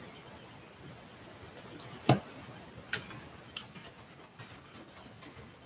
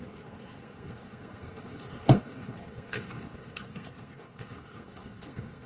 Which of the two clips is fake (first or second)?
second